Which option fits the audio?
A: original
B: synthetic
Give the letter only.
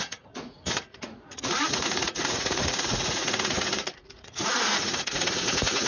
B